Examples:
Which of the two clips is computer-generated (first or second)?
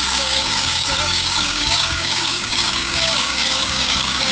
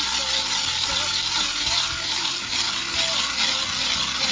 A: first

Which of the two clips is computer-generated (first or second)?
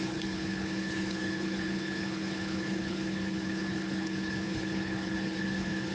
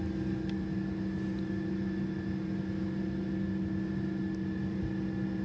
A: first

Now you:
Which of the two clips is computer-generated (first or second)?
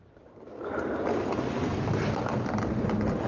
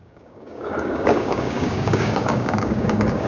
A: second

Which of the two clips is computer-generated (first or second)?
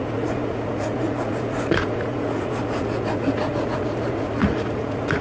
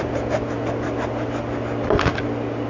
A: first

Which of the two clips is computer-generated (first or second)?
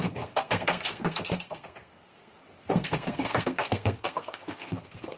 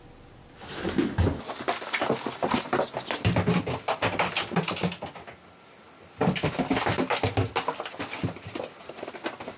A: first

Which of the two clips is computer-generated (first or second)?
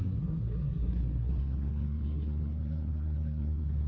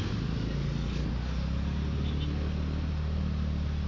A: first